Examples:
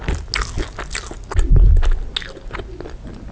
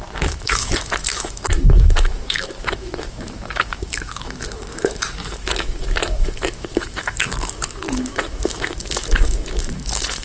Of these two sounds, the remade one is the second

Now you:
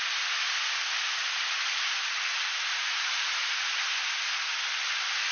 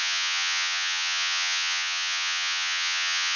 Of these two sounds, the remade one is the second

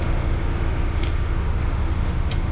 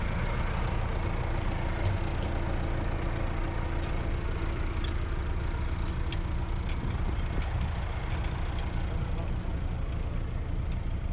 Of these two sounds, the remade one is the first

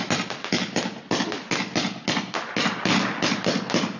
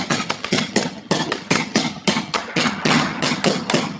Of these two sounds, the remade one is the second